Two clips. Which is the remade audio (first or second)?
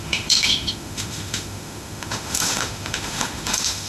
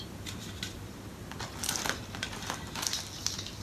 first